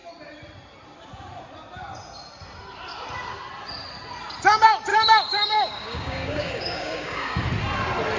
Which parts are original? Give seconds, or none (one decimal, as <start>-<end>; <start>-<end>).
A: 0.0-4.9; 7.4-8.2